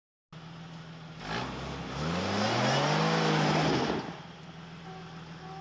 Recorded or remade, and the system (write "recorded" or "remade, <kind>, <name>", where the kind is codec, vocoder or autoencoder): recorded